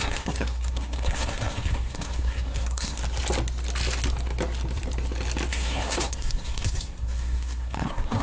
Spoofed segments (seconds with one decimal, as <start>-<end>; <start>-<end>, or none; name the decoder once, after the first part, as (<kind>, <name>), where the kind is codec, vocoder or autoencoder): 0.0-3.0 (codec, SNAC); 5.5-8.2